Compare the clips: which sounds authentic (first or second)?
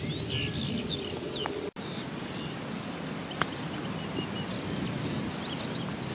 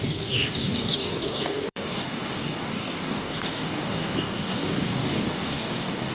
first